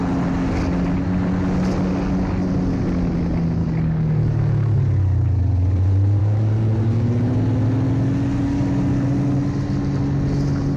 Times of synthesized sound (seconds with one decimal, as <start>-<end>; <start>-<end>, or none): 3.6-4.8; 6.2-7.3; 8.3-8.8